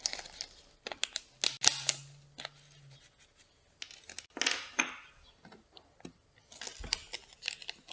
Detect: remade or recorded recorded